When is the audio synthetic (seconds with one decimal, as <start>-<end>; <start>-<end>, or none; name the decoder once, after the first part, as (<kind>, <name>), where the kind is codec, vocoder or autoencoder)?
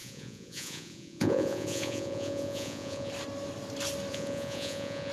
0.0-3.1 (vocoder, Vocos); 4.1-5.1